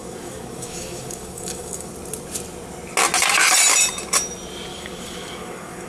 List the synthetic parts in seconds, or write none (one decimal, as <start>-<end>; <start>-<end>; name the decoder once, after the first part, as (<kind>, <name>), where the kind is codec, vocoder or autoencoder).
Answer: 0.0-1.9 (codec, DAC); 4.7-5.9